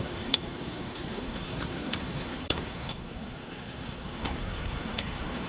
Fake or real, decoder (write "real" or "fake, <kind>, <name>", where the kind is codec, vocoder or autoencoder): fake, codec, SNAC